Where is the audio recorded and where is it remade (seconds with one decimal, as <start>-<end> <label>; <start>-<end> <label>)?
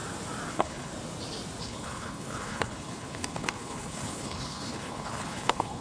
0.0-0.5 recorded; 0.5-0.9 remade; 0.9-1.6 recorded; 1.6-5.8 remade